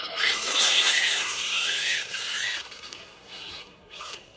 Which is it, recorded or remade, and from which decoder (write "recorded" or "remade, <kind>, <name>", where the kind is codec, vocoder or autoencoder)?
remade, codec, SNAC